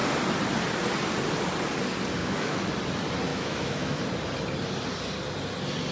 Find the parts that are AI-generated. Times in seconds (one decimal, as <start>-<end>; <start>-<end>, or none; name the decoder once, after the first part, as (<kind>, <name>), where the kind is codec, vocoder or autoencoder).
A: 2.2-2.7 (autoencoder, DAC-VAE); 3.3-4.0